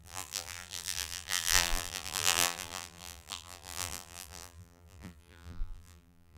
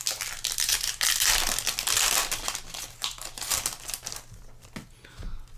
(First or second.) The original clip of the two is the second